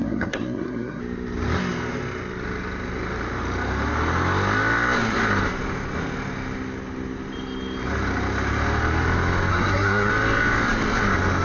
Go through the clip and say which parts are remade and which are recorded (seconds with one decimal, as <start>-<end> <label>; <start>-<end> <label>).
0.0-1.0 remade; 1.0-9.5 recorded; 9.5-10.1 remade; 10.1-11.4 recorded